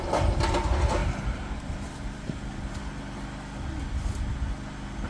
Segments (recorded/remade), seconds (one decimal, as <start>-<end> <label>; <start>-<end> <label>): 0.0-1.0 recorded; 1.0-2.7 remade; 2.7-5.1 recorded